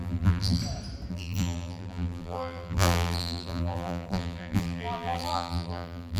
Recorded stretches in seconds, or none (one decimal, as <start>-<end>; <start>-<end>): 0.6-1.1